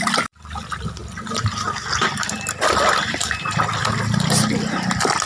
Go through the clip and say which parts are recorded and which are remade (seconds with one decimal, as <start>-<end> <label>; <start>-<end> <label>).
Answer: 0.0-5.3 remade